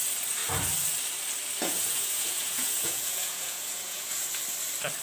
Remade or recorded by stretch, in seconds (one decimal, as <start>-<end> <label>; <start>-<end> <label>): 0.0-1.6 recorded; 1.6-4.4 remade; 4.4-5.0 recorded